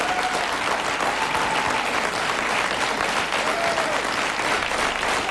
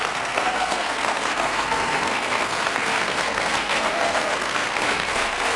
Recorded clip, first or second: first